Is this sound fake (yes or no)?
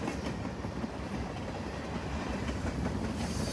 no